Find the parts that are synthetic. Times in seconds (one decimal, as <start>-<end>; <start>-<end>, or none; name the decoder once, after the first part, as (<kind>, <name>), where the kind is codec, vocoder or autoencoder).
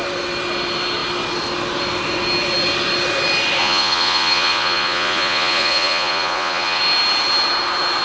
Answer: 3.6-6.8 (vocoder, Vocos)